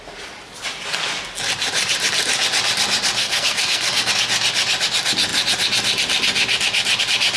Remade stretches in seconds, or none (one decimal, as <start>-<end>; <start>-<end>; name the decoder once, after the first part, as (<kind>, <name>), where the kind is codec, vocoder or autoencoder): 3.2-4.1 (codec, SNAC)

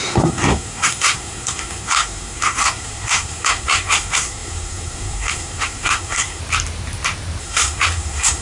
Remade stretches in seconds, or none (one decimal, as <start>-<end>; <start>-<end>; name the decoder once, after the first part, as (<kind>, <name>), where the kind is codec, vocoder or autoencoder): 0.0-6.4 (codec, SNAC); 7.4-8.4

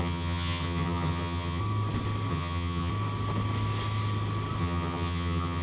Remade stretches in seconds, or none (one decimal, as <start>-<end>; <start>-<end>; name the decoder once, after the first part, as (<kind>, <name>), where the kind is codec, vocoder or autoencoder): 0.0-1.6 (vocoder, HiFi-GAN); 2.3-2.9; 4.6-5.6

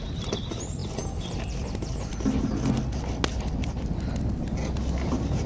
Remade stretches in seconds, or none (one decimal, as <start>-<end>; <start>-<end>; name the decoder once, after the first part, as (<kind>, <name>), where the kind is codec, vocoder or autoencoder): none